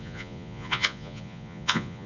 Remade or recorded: remade